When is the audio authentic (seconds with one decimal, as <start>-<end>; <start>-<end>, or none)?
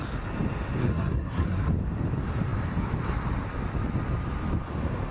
0.0-0.8; 1.7-5.1